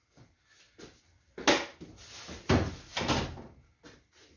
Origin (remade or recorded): recorded